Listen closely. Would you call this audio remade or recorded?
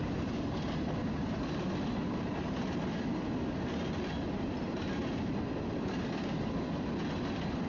recorded